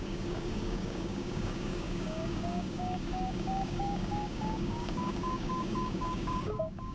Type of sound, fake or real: fake